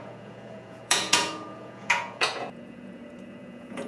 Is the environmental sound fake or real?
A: fake